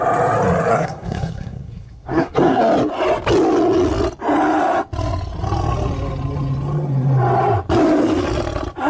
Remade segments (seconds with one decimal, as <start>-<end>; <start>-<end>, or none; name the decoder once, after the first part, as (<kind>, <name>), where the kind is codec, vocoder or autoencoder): 0.7-2.6 (codec, SNAC)